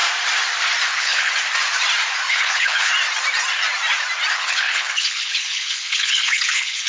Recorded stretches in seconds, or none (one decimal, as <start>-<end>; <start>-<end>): 0.0-0.9; 1.3-2.3; 2.9-4.3